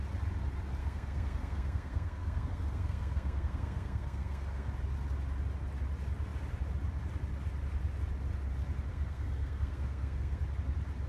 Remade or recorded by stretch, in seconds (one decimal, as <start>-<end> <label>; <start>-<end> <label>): 0.0-0.8 recorded; 0.8-4.7 remade; 4.7-8.9 recorded; 8.9-10.4 remade; 10.4-11.1 recorded

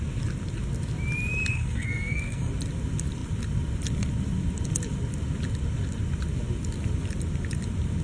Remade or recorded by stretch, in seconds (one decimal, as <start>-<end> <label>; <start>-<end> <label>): 0.0-1.5 recorded; 1.5-2.5 remade; 2.5-8.0 recorded

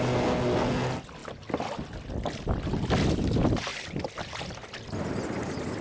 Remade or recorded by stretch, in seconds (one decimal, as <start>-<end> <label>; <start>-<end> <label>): 0.0-5.8 recorded

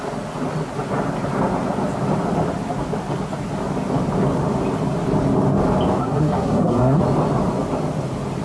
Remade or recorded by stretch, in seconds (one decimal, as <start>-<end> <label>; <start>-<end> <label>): 0.0-6.0 recorded; 6.0-7.0 remade; 7.0-8.4 recorded

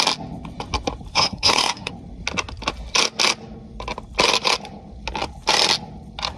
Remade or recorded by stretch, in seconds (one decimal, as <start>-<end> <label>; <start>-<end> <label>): 0.0-1.1 recorded; 1.1-1.9 remade; 1.9-6.4 recorded